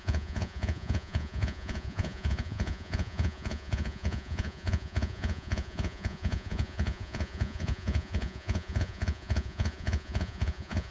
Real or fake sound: fake